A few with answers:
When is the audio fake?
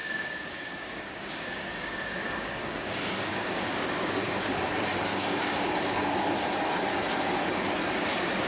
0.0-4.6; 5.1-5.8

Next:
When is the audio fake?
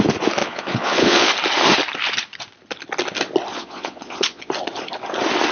0.4-1.3; 3.5-4.5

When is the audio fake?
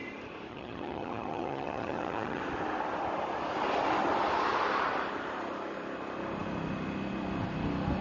0.5-2.4